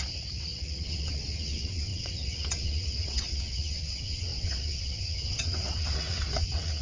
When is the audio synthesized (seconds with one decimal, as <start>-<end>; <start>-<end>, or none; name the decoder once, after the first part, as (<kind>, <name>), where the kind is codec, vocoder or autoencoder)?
0.0-6.8 (vocoder, WaveNeXt)